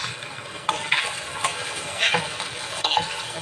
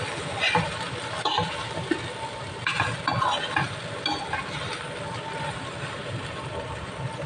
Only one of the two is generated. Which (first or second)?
first